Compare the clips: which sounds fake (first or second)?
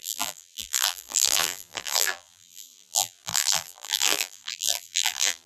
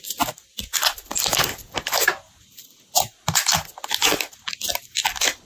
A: first